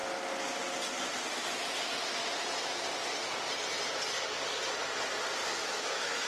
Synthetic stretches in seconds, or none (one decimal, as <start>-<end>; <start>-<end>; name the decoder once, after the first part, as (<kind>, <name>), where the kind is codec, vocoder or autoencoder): 5.6-6.3 (autoencoder, DAC-VAE)